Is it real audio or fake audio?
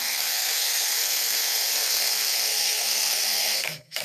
fake